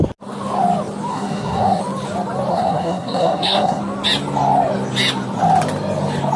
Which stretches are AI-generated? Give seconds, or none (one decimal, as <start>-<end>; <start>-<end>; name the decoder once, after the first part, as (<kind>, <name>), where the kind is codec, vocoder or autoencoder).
1.1-1.8 (codec, SNAC); 2.5-3.8